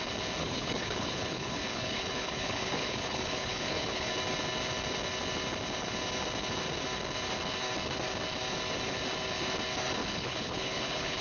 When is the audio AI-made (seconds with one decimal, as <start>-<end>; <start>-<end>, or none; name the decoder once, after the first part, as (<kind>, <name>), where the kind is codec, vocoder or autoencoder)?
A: 0.4-4.1 (codec, HILCodec); 10.0-11.2